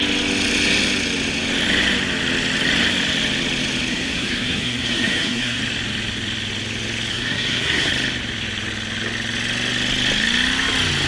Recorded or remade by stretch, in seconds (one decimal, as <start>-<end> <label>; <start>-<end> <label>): 0.0-3.9 recorded; 3.9-5.6 remade; 5.6-7.1 recorded; 7.1-7.9 remade; 7.9-11.1 recorded